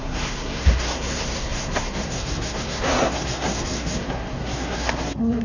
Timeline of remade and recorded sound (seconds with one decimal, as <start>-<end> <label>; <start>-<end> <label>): 0.0-5.4 remade